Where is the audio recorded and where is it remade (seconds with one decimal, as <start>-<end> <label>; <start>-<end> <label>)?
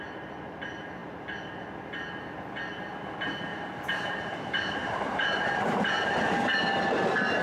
0.0-3.5 recorded; 3.5-6.1 remade; 6.1-7.4 recorded